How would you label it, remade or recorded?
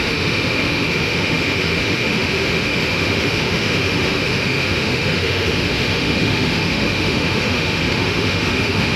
remade